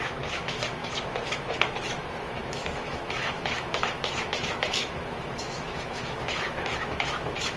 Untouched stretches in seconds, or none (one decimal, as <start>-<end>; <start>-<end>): none